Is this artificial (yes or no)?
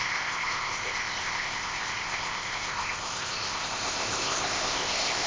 yes